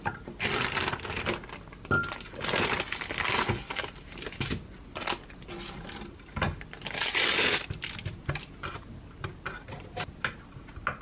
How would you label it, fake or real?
real